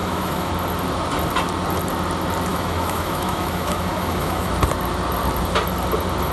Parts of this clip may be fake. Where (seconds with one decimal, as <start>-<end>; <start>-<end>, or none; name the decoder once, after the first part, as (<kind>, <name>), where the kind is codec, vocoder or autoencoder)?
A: 0.0-0.5 (autoencoder, DAC-VAE); 2.5-4.5